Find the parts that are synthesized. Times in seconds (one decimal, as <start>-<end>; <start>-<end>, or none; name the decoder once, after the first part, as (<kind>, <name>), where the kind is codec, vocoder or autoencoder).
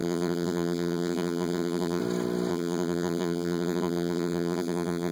0.0-2.0 (vocoder, BigVGAN v2); 2.5-5.1